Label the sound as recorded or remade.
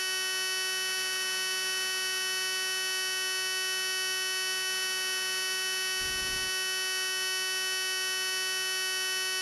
recorded